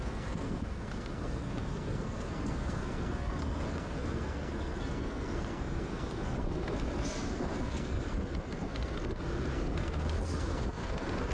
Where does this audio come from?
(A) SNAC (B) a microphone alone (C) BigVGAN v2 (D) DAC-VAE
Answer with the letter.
A